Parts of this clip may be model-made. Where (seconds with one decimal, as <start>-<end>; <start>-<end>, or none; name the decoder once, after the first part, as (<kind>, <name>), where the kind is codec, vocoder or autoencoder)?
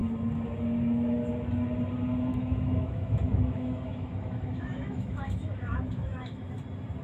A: 2.3-6.5 (autoencoder, DAC-VAE)